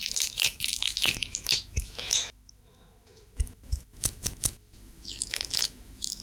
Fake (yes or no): yes